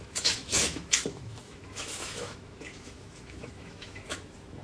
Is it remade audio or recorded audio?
remade